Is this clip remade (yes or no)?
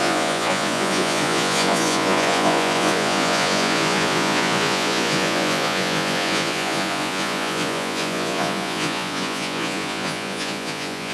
yes